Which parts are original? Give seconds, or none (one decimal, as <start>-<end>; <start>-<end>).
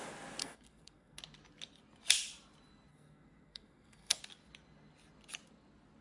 0.0-0.4; 1.2-2.9; 4.2-6.0